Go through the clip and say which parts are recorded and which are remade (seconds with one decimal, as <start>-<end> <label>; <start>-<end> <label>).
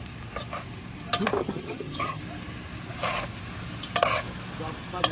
0.0-1.4 recorded; 1.4-2.2 remade; 2.2-5.1 recorded